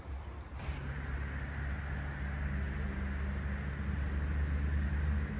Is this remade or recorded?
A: recorded